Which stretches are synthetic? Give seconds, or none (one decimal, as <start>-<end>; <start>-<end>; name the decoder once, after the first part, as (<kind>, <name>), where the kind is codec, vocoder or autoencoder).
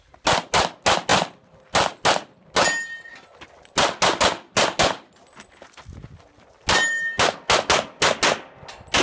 none